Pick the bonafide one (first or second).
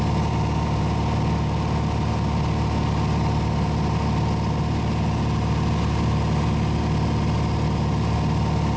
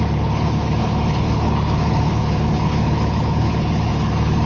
first